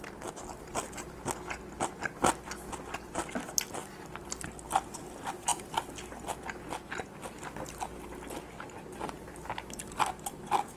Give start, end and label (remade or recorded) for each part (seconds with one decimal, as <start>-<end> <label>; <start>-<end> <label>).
0.0-10.8 recorded